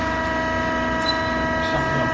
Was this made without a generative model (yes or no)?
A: yes